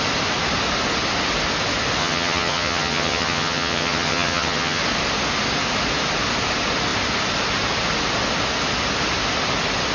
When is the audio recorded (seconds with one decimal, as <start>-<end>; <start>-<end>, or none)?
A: 0.0-2.0; 4.8-9.9